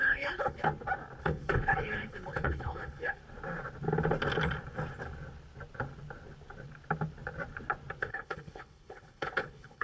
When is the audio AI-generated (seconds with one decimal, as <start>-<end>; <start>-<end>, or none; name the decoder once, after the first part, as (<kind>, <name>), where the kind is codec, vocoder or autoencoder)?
0.0-0.7 (codec, HILCodec); 1.2-3.2; 8.0-9.8